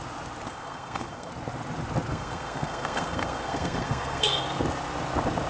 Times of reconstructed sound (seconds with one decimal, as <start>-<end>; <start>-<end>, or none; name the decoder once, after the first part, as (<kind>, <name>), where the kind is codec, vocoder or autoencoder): 0.5-1.3 (codec, SNAC); 2.1-4.4